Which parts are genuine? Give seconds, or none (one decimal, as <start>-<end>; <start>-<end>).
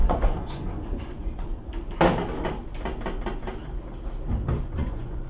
1.7-4.6